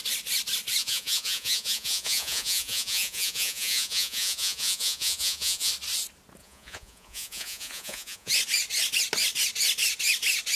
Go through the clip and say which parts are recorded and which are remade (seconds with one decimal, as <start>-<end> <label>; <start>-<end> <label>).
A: 0.0-0.8 recorded; 0.8-5.7 remade; 5.7-6.4 recorded; 6.4-8.3 remade; 8.3-10.5 recorded